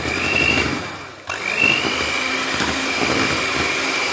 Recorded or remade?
recorded